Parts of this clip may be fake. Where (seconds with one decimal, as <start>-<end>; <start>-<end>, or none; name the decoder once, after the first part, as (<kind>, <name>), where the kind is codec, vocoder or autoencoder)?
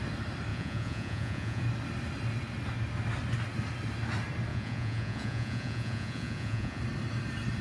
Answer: 0.5-1.6 (vocoder, Vocos); 4.5-6.8